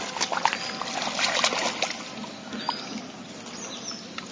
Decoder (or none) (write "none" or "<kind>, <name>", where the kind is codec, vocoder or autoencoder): none